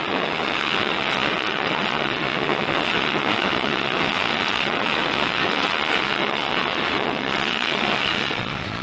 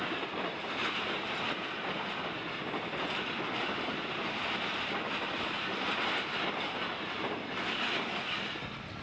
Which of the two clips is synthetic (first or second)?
first